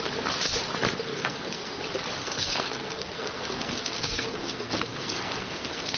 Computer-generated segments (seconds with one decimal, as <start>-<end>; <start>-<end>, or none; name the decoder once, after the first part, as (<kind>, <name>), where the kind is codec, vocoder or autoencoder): 1.1-1.8 (codec, SNAC); 2.2-6.0